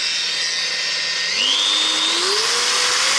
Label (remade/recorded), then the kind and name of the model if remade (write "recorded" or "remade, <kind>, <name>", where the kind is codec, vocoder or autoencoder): recorded